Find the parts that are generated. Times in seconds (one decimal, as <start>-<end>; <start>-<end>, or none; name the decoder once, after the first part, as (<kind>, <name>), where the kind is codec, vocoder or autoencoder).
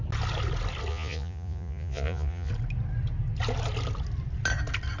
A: 0.9-2.5 (vocoder, Vocos)